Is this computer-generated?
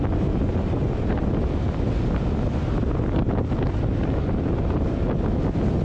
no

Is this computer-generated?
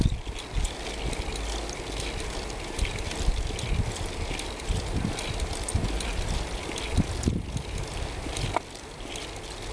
no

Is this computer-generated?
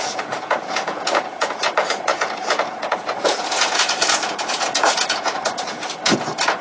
yes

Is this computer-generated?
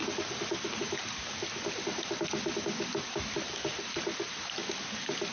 no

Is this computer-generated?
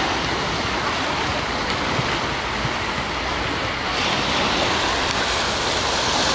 no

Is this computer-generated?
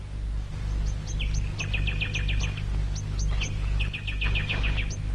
no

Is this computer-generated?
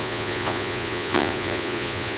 yes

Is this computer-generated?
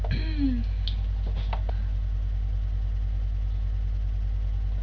no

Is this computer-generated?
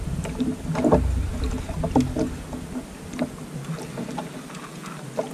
no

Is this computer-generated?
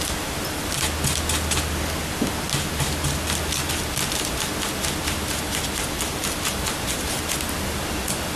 no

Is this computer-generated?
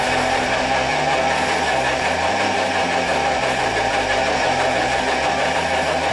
no